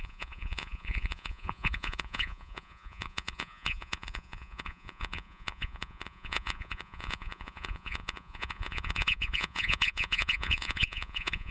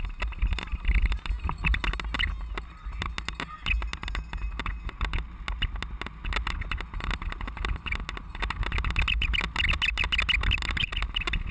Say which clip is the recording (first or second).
second